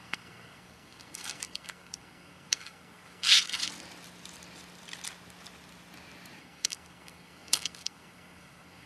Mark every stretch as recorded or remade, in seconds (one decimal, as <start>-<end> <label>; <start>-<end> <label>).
0.0-3.6 remade; 3.6-6.4 recorded; 6.4-8.9 remade